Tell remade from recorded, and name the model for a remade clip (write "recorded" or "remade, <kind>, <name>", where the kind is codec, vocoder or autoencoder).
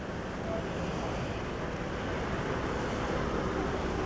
recorded